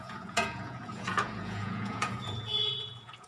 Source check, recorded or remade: remade